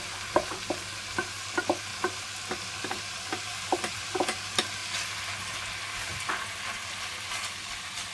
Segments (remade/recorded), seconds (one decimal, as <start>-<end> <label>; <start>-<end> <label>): 0.0-1.9 recorded; 1.9-2.7 remade; 2.7-3.5 recorded; 3.5-4.2 remade; 4.2-6.1 recorded; 6.1-7.0 remade; 7.0-8.1 recorded